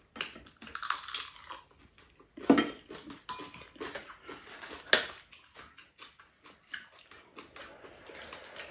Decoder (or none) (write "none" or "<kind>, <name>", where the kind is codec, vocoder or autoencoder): none